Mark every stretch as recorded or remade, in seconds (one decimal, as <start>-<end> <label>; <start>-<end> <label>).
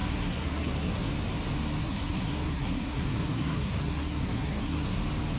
0.0-1.1 remade; 1.1-1.8 recorded; 1.8-5.0 remade; 5.0-5.4 recorded